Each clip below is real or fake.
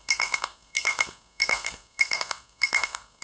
fake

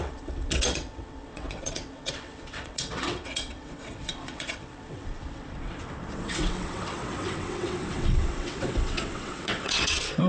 fake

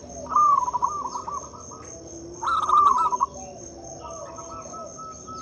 real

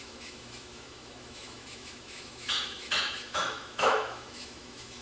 fake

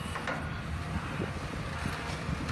fake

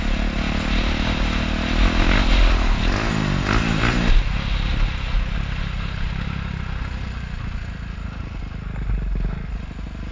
real